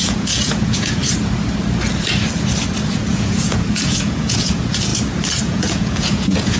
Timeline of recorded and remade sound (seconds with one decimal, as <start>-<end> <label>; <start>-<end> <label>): 0.0-1.0 remade; 1.0-2.9 recorded; 2.9-4.9 remade; 4.9-5.4 recorded; 5.4-6.6 remade